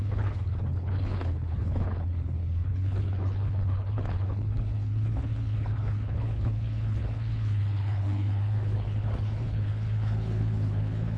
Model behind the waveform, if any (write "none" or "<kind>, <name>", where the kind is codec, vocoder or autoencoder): codec, HILCodec